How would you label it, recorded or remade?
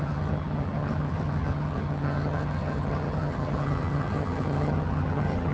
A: remade